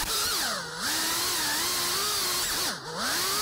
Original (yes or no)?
yes